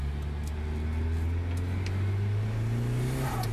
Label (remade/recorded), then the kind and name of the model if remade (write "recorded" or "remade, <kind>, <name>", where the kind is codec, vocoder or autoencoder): recorded